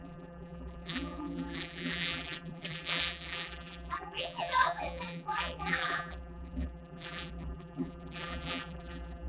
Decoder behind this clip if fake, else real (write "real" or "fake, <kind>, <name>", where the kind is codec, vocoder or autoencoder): fake, vocoder, BigVGAN v2